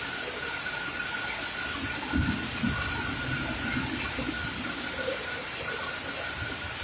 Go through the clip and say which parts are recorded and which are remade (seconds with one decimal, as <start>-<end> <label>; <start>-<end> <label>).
0.0-6.8 recorded